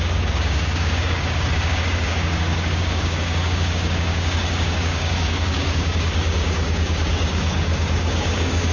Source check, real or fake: fake